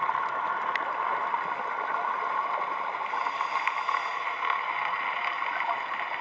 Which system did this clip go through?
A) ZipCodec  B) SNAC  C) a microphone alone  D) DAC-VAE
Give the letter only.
C